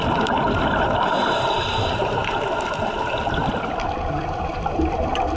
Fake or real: fake